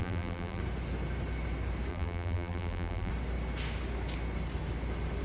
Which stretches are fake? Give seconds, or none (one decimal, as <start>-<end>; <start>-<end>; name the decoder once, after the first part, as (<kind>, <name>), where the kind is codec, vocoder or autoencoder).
0.0-0.6 (vocoder, BigVGAN v2); 1.9-3.1